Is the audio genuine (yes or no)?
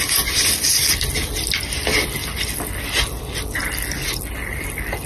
yes